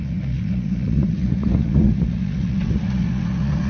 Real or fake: fake